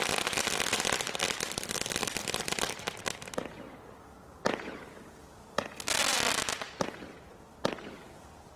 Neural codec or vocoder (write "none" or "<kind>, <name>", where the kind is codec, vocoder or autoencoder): none